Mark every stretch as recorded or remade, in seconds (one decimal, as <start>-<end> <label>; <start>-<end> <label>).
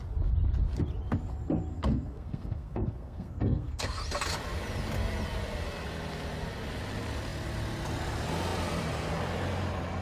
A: 0.0-1.7 recorded; 1.7-4.0 remade; 4.0-10.0 recorded